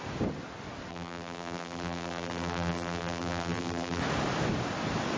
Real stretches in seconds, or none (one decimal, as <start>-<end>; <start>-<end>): 0.0-0.9; 4.0-5.2